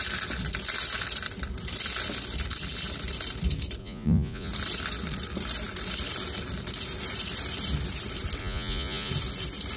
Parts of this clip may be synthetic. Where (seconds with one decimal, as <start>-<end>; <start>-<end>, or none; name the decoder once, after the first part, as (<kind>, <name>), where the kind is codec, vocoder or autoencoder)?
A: 3.8-4.5 (vocoder, Vocos); 8.4-9.1